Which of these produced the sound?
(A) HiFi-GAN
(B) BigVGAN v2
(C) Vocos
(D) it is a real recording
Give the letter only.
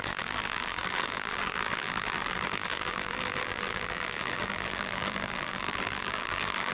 B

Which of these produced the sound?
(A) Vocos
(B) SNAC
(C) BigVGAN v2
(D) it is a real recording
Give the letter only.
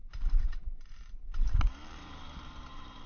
C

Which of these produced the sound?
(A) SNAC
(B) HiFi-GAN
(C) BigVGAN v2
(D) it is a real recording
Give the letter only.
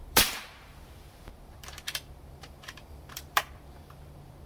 C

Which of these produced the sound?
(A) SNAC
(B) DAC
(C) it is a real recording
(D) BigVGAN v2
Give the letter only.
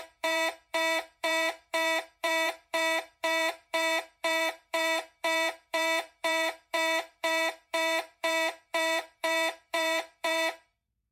D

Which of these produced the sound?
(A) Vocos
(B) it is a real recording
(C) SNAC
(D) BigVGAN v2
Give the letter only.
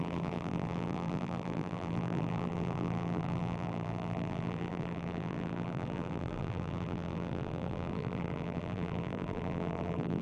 D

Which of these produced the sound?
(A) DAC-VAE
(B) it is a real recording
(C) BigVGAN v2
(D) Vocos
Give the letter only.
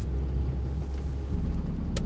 B